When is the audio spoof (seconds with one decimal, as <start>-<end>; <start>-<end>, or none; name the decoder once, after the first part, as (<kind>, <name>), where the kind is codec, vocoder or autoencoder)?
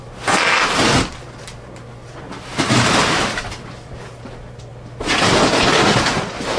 2.5-3.4 (vocoder, BigVGAN v2)